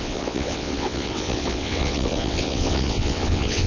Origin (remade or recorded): remade